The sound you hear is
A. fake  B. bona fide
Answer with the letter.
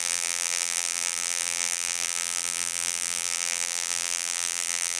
A